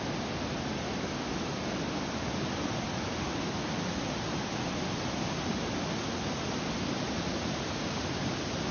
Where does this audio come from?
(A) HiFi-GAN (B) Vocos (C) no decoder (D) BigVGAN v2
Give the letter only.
C